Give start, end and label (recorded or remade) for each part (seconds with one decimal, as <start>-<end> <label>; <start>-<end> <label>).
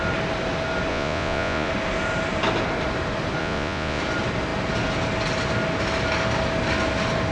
0.0-0.9 recorded; 0.9-1.7 remade; 1.7-3.4 recorded; 3.4-4.0 remade; 4.0-7.3 recorded